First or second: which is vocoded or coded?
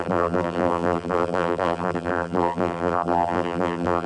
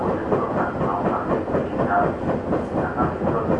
first